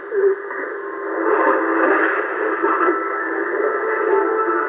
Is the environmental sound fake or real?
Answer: real